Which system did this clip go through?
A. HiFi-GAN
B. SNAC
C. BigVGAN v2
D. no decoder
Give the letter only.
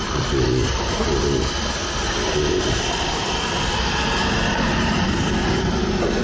C